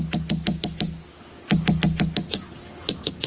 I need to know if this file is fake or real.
real